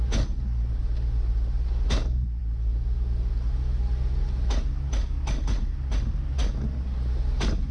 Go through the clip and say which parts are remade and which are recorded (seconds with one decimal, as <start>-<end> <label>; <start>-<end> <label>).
0.0-7.7 recorded